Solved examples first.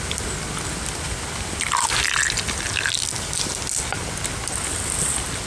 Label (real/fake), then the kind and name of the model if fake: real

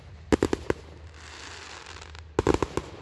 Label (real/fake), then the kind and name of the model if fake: real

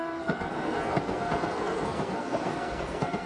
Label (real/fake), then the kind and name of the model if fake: fake, codec, SNAC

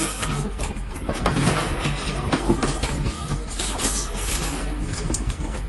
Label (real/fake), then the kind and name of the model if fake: fake, codec, SNAC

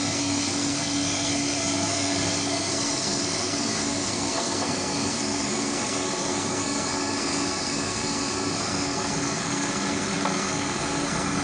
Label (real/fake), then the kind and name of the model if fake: fake, codec, SNAC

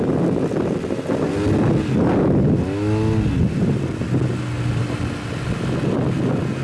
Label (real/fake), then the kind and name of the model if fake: real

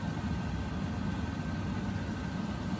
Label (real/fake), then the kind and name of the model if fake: real